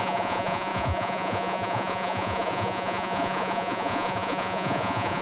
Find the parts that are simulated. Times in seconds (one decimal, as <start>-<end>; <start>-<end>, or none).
0.0-5.2